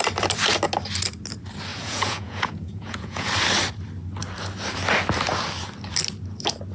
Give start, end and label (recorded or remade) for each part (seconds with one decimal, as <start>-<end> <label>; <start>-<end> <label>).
0.0-1.7 recorded; 1.7-3.3 remade; 3.3-6.7 recorded